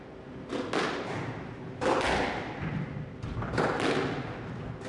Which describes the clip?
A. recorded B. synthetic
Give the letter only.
A